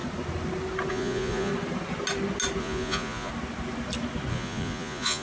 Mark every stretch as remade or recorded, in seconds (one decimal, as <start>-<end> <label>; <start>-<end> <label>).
0.0-0.9 recorded; 0.9-1.5 remade; 1.5-2.6 recorded; 2.6-3.3 remade; 3.3-4.3 recorded; 4.3-5.2 remade